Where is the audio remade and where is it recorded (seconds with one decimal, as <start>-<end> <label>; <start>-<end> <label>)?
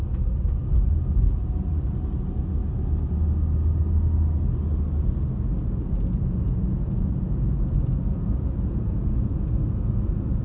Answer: 0.0-2.6 remade; 2.6-6.6 recorded; 6.6-10.4 remade